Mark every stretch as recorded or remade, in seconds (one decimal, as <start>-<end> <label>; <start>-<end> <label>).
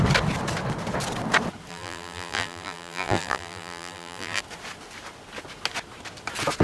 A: 0.0-1.7 recorded; 1.7-4.4 remade; 4.4-6.6 recorded